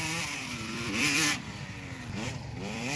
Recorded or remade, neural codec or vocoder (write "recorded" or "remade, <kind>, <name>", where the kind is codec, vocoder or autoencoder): remade, vocoder, BigVGAN v2